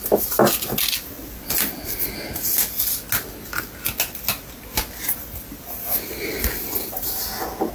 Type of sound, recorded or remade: recorded